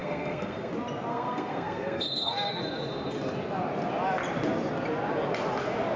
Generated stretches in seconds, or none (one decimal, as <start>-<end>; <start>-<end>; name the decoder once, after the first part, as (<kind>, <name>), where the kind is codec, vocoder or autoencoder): 0.0-0.7 (codec, SNAC); 1.1-2.6